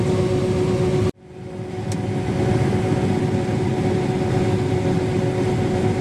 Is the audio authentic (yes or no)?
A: yes